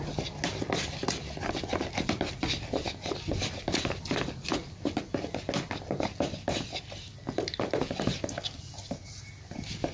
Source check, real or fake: real